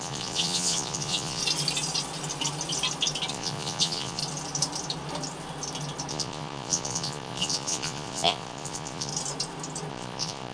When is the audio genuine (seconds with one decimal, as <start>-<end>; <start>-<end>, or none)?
1.4-3.3; 4.2-6.1; 9.1-9.9